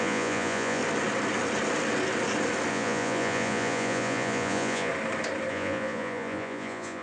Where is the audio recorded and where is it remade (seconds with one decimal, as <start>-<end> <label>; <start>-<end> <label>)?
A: 0.0-0.8 remade; 0.8-2.7 recorded; 2.7-4.9 remade; 4.9-5.5 recorded; 5.5-7.0 remade